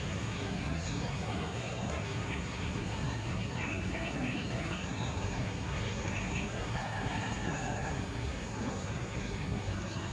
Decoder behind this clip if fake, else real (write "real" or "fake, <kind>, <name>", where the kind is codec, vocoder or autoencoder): fake, codec, SNAC